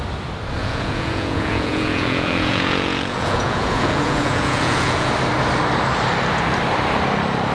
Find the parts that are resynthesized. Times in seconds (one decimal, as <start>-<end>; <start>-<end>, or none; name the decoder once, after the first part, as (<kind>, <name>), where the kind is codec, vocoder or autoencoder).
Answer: 0.6-5.1 (vocoder, Vocos)